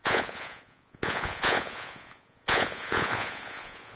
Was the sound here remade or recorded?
remade